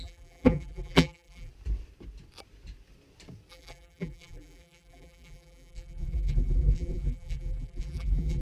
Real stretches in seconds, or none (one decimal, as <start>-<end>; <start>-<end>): 1.5-3.5